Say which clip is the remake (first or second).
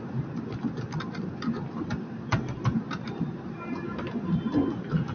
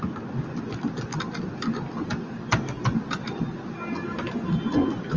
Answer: first